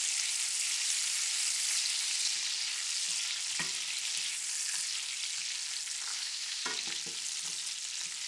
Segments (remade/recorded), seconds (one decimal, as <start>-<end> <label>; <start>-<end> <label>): 0.0-6.1 recorded; 6.1-6.6 remade; 6.6-8.3 recorded